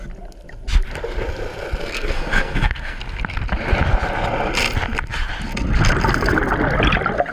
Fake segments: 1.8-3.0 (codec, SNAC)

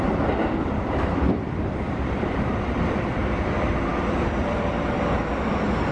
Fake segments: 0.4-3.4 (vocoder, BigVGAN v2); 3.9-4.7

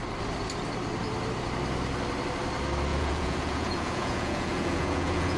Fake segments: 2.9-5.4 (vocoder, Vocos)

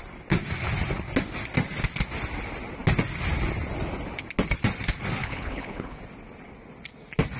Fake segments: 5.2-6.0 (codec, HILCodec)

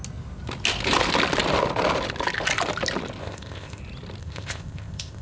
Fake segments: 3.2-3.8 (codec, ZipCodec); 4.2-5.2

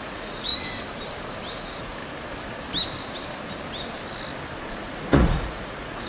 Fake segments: 0.0-0.5 (vocoder, Vocos); 1.5-2.0; 4.6-6.1

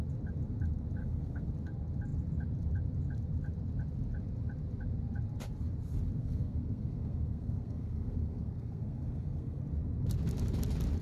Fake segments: 1.0-1.5 (codec, SNAC); 6.2-9.6

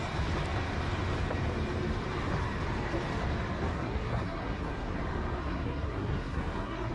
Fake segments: 3.7-5.0 (codec, SNAC); 5.4-6.9